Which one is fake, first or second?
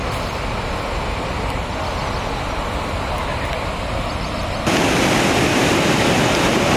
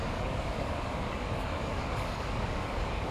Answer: second